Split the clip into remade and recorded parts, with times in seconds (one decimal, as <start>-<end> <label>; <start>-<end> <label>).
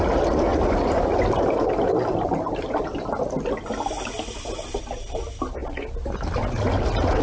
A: 0.0-7.2 recorded